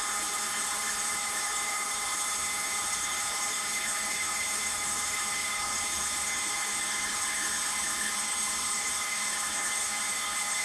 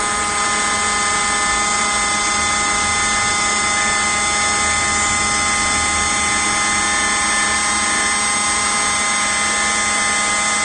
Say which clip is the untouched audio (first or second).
second